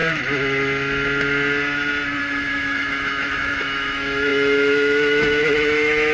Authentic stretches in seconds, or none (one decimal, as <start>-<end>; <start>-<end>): 0.0-2.2